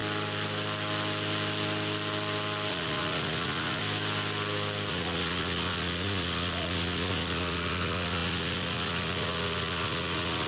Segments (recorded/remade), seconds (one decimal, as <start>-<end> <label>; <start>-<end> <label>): 0.0-2.7 recorded; 2.7-3.8 remade; 3.8-4.9 recorded; 4.9-10.5 remade